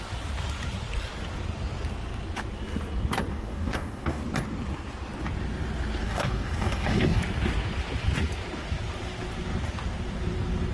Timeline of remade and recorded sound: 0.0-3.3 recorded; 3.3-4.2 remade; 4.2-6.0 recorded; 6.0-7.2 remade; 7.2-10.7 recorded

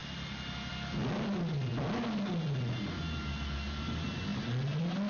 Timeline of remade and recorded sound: 0.0-5.1 recorded

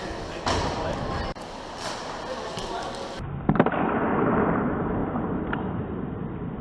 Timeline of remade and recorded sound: 0.0-6.6 recorded

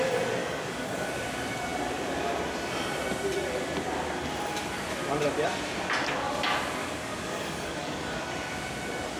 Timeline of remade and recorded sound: 0.0-0.4 recorded; 0.4-1.1 remade; 1.1-6.8 recorded; 6.8-8.2 remade; 8.2-9.2 recorded